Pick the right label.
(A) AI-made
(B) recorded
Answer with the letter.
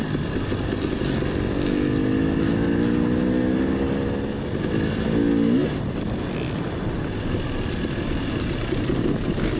B